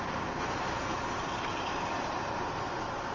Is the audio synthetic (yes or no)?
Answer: no